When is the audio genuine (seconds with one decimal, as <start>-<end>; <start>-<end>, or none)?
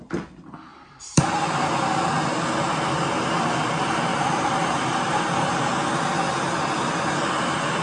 0.0-0.7; 1.3-4.1; 5.2-7.8